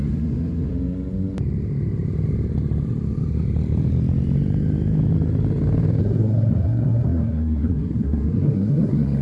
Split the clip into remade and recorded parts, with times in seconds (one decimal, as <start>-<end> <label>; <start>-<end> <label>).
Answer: 0.0-0.7 remade; 0.7-6.0 recorded; 6.0-9.2 remade